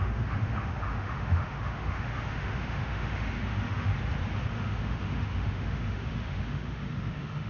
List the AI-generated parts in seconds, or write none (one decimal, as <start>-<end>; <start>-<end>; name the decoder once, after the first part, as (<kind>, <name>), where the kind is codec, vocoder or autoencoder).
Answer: 0.0-3.9 (autoencoder, DAC-VAE); 4.5-7.5